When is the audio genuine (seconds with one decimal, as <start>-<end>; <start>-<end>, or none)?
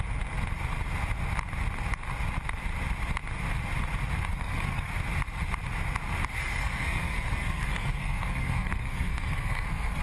0.0-4.3; 4.9-6.6